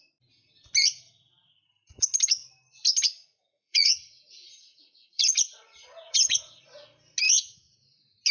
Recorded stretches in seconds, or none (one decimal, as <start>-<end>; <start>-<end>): 0.0-3.2; 6.6-8.3